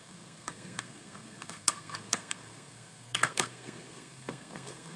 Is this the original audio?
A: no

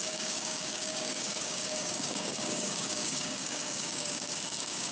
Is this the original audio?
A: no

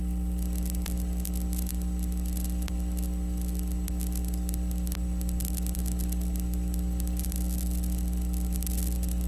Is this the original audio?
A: yes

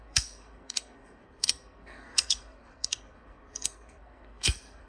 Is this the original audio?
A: no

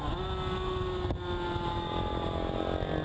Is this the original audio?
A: yes